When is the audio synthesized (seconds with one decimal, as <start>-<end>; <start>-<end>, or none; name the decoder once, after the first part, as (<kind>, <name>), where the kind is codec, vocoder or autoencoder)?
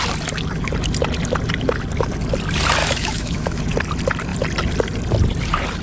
2.8-3.6 (autoencoder, DAC-VAE)